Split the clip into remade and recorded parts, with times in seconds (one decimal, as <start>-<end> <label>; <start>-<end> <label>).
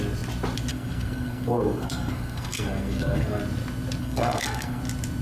0.0-0.7 recorded; 0.7-3.4 remade; 3.4-4.0 recorded; 4.0-4.8 remade; 4.8-5.2 recorded